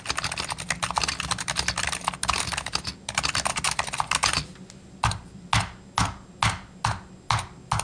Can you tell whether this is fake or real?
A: real